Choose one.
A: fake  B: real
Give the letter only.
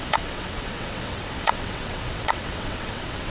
A